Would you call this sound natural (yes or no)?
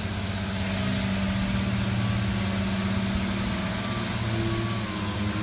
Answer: yes